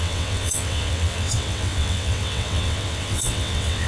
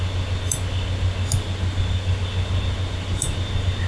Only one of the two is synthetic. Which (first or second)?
first